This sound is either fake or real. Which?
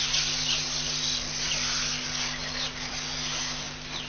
real